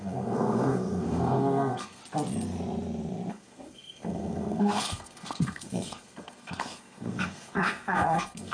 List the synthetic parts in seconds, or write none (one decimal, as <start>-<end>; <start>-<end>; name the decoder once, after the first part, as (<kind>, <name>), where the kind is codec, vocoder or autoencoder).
0.0-2.0 (codec, SNAC); 3.3-8.5